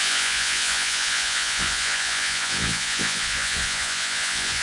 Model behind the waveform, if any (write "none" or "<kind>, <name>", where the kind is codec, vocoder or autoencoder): vocoder, Vocos